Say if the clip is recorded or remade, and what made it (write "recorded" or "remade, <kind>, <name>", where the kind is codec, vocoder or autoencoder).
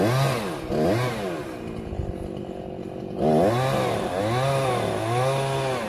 recorded